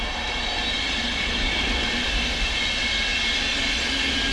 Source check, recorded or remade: recorded